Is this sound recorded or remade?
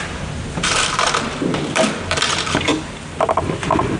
recorded